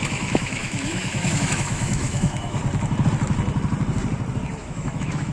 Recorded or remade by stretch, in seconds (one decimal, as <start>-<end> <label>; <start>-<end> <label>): 0.0-2.6 remade; 2.6-4.6 recorded; 4.6-5.3 remade